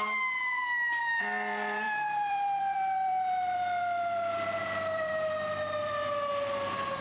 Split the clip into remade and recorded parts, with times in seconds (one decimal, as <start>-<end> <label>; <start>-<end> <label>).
0.0-1.0 recorded; 1.0-5.1 remade; 5.1-7.0 recorded